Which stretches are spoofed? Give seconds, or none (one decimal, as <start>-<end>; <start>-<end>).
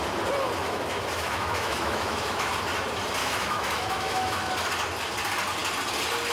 0.6-2.5; 3.2-4.5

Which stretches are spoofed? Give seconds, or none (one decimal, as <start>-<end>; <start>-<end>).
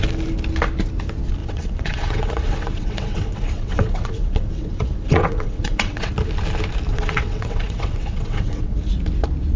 1.4-6.1; 6.9-8.8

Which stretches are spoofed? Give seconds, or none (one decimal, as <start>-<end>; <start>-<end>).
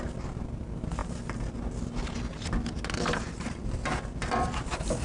none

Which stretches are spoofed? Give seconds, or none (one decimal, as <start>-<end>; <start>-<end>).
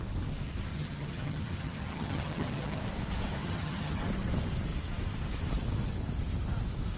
0.7-2.8; 3.4-4.0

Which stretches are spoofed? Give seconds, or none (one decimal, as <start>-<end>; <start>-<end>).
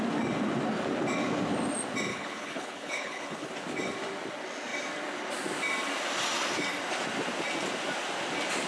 2.1-3.5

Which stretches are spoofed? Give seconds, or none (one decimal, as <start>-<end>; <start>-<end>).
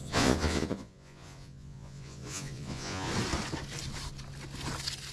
0.0-3.1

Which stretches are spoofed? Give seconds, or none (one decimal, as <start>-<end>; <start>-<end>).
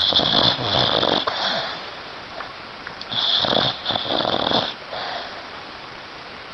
none